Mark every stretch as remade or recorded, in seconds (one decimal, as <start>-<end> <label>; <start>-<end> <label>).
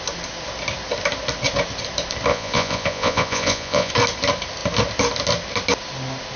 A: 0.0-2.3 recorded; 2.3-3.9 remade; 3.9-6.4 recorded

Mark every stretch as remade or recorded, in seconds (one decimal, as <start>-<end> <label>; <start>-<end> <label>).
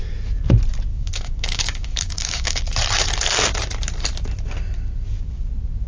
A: 0.0-0.9 recorded; 0.9-2.6 remade; 2.6-5.9 recorded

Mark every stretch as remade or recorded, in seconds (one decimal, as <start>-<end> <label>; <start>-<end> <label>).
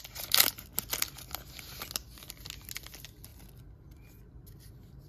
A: 0.0-5.1 recorded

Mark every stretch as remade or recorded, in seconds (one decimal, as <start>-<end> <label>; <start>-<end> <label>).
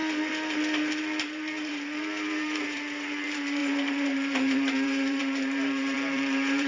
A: 0.0-1.0 recorded; 1.0-6.7 remade